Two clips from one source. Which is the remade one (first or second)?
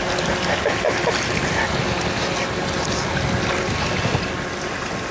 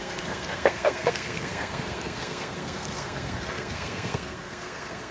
second